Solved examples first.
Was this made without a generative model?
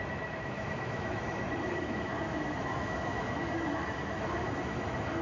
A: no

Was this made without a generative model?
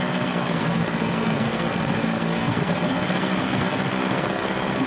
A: no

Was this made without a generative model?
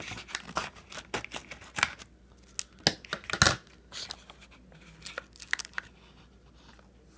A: yes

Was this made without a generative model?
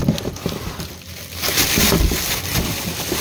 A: yes